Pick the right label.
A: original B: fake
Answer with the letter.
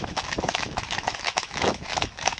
B